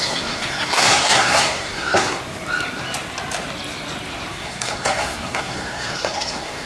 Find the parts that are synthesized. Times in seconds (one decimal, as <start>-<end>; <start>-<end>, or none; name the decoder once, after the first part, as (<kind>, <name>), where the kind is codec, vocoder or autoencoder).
0.0-2.2 (codec, SNAC); 4.3-6.7